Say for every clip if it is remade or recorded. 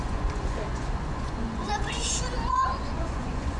remade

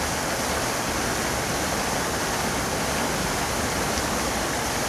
recorded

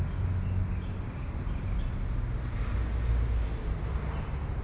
recorded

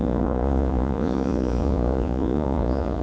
remade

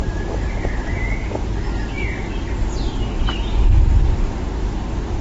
recorded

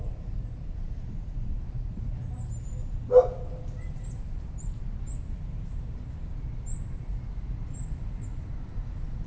recorded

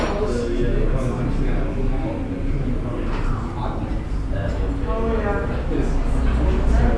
recorded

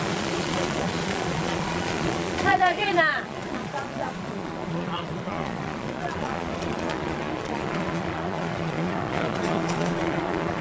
remade